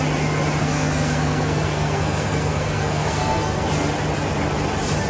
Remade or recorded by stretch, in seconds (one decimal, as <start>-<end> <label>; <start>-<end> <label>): 0.0-0.6 recorded; 0.6-3.7 remade; 3.7-5.1 recorded

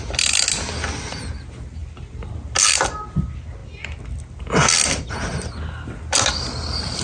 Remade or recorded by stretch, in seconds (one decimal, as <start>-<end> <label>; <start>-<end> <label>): 0.0-7.0 recorded